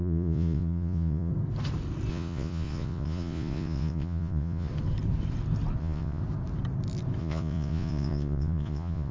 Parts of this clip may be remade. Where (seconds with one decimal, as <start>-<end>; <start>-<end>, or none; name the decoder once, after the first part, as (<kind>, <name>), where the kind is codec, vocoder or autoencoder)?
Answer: 0.0-1.3 (vocoder, Vocos); 2.1-4.7; 5.8-6.2; 7.2-9.1